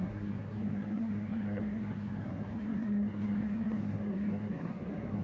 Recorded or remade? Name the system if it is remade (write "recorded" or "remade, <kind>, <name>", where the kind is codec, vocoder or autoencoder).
remade, codec, SNAC